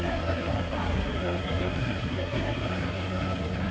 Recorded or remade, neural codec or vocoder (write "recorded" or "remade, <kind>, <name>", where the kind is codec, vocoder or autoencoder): remade, codec, SNAC